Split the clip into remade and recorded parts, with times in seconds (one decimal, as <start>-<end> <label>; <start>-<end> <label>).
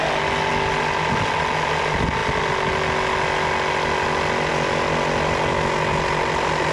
0.0-6.7 recorded